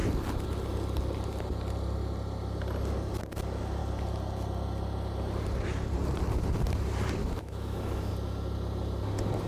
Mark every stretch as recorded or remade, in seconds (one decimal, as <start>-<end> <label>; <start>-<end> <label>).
0.0-7.2 recorded; 7.2-8.1 remade; 8.1-9.5 recorded